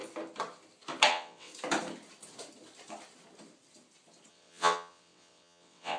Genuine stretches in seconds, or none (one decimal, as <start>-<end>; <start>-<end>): 0.0-1.1; 1.5-4.3